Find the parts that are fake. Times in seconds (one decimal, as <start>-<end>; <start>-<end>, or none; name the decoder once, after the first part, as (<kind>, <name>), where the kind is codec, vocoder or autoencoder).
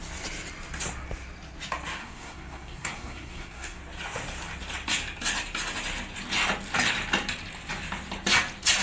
2.0-3.8 (codec, SNAC)